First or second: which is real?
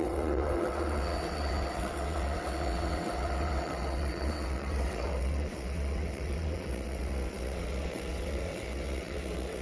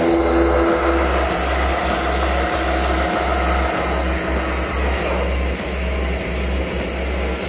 second